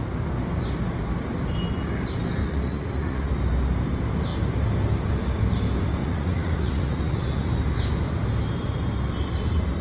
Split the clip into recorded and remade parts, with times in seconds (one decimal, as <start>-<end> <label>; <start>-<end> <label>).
0.0-2.4 recorded; 2.4-3.3 remade; 3.3-6.0 recorded; 6.0-7.5 remade; 7.5-9.8 recorded